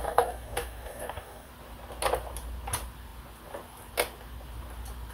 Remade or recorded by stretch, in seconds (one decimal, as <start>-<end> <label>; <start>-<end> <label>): 0.0-1.5 remade; 1.5-5.1 recorded